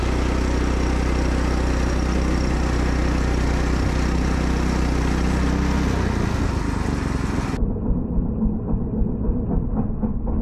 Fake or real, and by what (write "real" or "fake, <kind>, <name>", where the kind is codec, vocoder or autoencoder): real